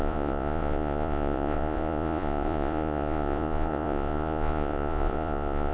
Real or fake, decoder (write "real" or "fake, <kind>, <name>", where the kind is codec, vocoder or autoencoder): fake, vocoder, Vocos